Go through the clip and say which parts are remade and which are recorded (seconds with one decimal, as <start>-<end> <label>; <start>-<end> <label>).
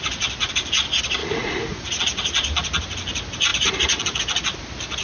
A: 0.0-1.2 recorded; 1.2-2.0 remade; 2.0-5.0 recorded